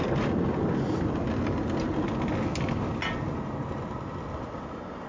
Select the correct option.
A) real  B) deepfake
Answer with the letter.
A